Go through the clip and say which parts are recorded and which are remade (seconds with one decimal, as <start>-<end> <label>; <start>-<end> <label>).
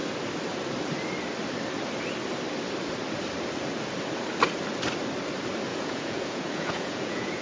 0.0-5.7 recorded; 5.7-7.4 remade